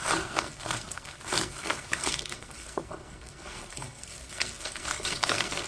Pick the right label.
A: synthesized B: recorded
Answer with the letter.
A